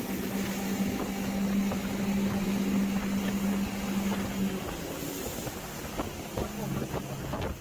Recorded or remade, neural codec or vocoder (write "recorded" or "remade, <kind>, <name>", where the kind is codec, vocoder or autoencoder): recorded